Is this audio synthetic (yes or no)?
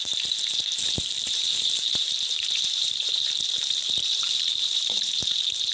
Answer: yes